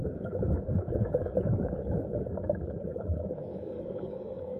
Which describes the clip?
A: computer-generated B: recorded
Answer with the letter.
A